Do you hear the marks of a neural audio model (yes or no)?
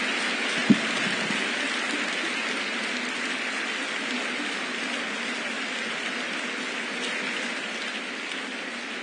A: no